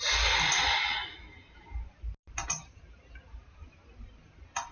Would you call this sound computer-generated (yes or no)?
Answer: no